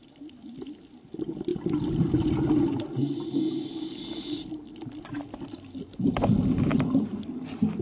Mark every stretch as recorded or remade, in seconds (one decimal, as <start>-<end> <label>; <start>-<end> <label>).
0.0-7.8 recorded